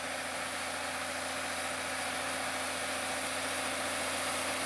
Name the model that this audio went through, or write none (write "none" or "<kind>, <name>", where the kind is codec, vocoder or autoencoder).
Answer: none